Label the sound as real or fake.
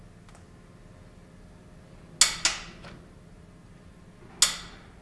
real